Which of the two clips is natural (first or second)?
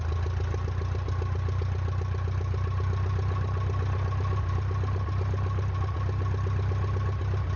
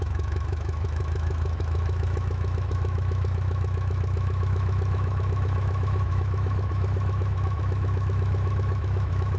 first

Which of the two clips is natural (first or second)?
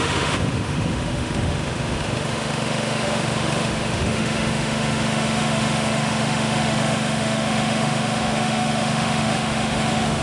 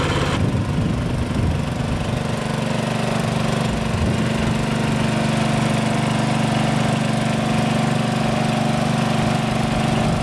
second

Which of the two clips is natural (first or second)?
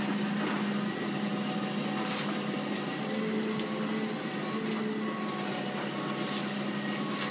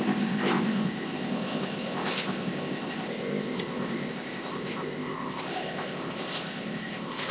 first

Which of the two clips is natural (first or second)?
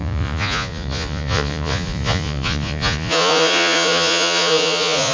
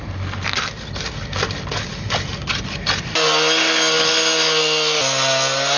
second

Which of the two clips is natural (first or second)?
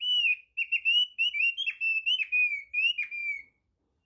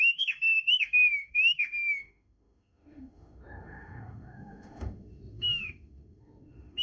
first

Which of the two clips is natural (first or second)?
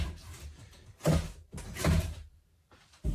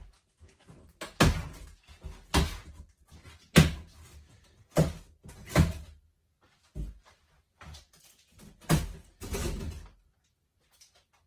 second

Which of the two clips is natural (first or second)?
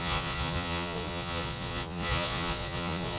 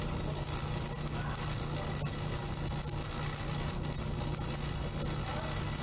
second